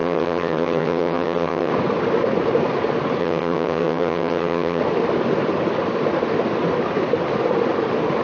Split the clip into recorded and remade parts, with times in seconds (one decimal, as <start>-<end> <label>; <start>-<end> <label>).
0.0-1.7 remade; 1.7-3.2 recorded; 3.2-4.8 remade; 4.8-8.2 recorded